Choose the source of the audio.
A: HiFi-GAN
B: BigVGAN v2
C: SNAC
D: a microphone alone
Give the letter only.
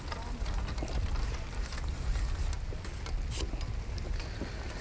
D